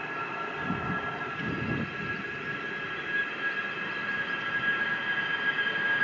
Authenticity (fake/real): real